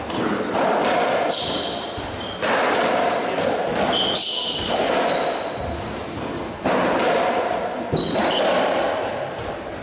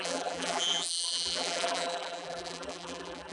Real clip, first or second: first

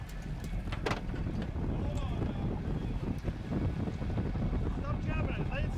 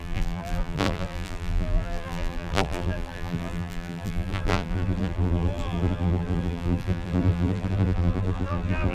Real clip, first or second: first